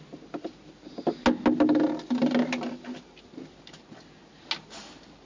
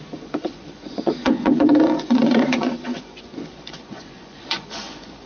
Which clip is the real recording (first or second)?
first